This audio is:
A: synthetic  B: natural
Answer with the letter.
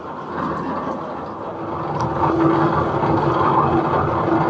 B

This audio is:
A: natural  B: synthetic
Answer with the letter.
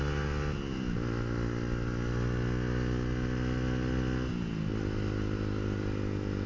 A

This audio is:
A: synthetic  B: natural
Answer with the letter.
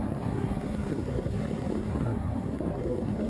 A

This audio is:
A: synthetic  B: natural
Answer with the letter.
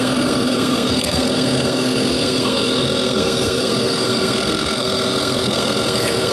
A